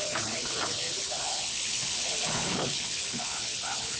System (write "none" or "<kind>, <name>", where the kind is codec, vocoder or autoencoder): codec, HILCodec